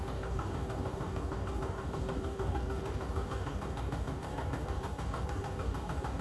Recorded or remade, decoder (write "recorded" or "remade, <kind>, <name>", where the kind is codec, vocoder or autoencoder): remade, codec, DAC